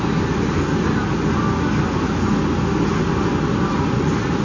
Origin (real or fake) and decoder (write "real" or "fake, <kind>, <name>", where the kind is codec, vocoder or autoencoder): real